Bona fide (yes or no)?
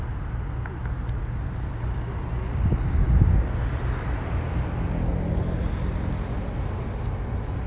yes